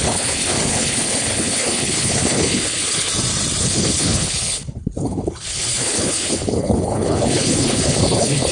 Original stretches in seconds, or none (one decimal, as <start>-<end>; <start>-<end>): 3.1-3.6